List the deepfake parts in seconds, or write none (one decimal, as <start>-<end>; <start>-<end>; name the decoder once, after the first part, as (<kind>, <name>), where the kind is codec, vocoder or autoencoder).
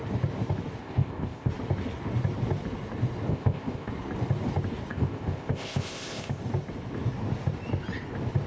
0.8-1.5 (codec, ZipCodec); 3.3-3.9; 4.9-6.4